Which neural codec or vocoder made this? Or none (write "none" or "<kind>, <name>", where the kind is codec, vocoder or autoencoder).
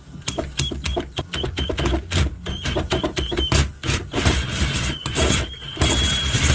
none